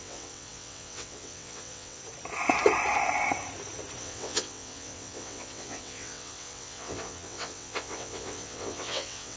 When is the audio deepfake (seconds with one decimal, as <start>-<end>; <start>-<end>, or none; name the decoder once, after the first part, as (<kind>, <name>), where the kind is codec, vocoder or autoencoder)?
0.0-2.0 (vocoder, WaveNeXt); 4.0-9.4

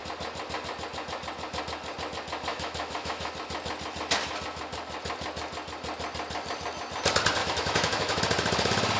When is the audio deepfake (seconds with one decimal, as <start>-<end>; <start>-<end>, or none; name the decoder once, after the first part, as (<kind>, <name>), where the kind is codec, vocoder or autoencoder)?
2.5-3.3 (autoencoder, DAC-VAE); 7.4-8.2

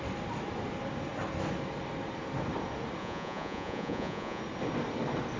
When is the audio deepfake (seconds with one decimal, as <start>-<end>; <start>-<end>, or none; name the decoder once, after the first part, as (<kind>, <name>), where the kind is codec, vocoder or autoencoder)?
3.0-4.4 (vocoder, Vocos)

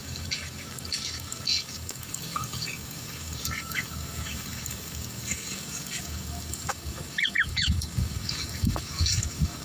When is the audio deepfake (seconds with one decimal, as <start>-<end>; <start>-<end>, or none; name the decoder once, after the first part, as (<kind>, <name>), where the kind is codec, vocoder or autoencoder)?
0.0-9.6 (codec, DAC)

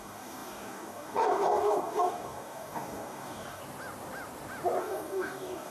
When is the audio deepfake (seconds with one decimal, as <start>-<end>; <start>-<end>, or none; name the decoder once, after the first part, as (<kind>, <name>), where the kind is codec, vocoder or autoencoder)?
0.0-3.6 (codec, DAC); 4.8-5.7